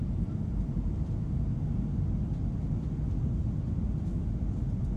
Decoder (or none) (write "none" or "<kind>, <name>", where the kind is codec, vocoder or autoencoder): none